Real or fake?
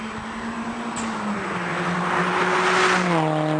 real